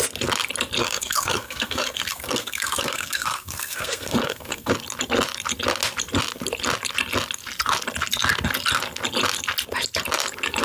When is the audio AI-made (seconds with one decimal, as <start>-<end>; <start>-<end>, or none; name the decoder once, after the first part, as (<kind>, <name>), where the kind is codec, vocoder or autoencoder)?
0.8-4.7 (codec, SNAC)